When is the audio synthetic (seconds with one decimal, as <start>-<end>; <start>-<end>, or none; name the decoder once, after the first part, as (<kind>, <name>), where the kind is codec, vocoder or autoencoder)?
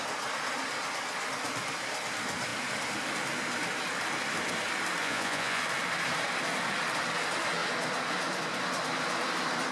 5.0-5.6 (vocoder, Vocos)